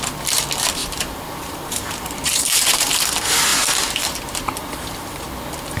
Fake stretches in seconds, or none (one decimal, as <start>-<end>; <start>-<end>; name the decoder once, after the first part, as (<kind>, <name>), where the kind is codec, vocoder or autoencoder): 0.8-3.0 (vocoder, BigVGAN v2); 3.5-5.3